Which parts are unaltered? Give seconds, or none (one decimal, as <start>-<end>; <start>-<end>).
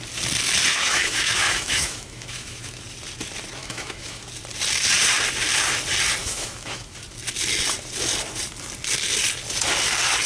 0.0-0.7; 2.8-3.6; 4.2-6.2; 6.9-10.3